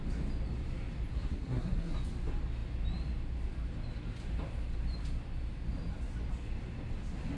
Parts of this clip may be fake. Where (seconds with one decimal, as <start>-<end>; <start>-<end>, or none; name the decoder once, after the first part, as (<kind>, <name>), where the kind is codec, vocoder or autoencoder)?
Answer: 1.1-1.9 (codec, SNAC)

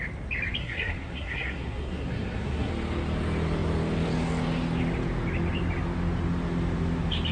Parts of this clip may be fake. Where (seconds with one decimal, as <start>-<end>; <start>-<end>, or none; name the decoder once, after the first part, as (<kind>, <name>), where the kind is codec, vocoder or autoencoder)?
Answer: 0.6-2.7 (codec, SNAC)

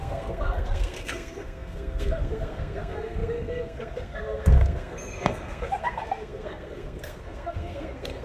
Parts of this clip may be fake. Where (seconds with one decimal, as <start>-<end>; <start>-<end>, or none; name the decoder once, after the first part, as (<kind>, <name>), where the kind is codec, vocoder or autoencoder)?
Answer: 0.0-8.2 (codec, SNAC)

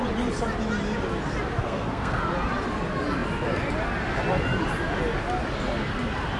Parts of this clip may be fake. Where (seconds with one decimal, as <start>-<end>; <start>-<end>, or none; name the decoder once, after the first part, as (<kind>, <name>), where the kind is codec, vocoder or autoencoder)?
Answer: 1.6-2.2 (codec, SNAC)

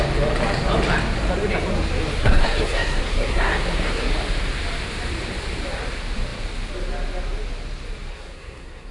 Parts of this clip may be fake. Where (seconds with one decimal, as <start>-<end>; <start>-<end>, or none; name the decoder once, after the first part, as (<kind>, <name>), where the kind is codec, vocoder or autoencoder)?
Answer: 2.2-4.1 (codec, SNAC); 8.1-8.9